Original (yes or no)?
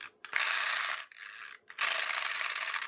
yes